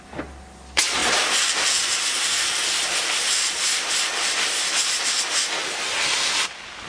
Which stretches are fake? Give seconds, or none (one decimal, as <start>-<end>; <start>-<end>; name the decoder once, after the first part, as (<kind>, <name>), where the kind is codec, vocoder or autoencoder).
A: 1.0-3.9 (vocoder, BigVGAN v2)